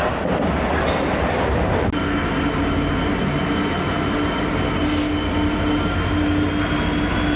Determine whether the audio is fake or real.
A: real